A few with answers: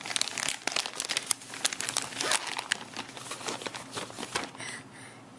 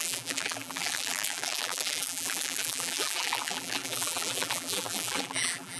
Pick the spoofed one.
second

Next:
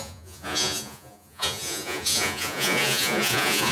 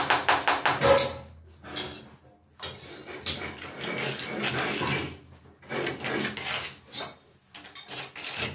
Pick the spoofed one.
first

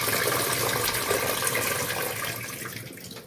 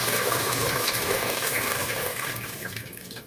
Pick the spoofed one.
second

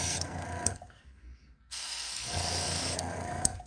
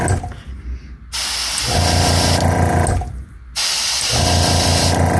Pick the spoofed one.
first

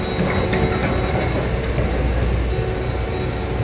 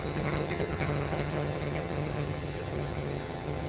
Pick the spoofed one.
second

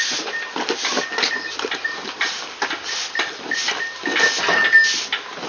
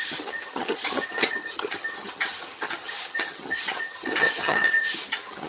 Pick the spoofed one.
second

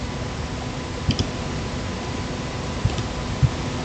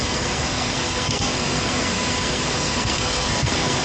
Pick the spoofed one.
second